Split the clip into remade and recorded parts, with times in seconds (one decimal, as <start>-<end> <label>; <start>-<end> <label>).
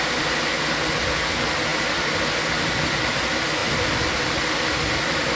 0.0-5.3 recorded